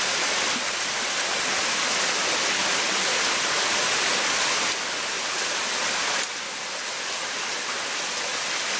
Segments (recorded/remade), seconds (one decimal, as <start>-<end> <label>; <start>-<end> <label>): 0.0-8.8 recorded